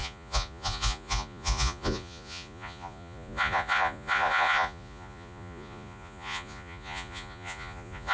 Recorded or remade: remade